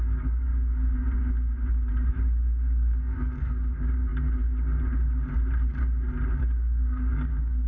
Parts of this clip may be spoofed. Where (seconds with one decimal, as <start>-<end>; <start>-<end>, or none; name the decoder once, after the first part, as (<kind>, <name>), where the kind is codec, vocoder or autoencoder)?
0.0-0.5 (codec, DAC); 2.1-4.1; 6.4-7.7